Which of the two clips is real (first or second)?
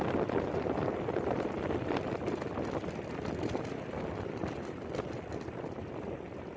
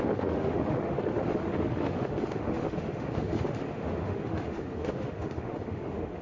first